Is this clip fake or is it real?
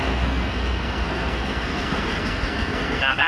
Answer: fake